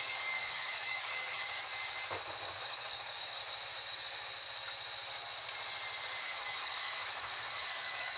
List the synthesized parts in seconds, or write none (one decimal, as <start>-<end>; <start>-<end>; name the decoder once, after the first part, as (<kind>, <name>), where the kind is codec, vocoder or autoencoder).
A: 0.0-1.7 (codec, DAC); 2.6-3.4; 6.2-8.2